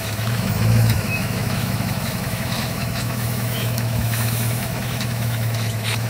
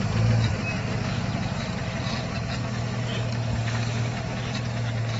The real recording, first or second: second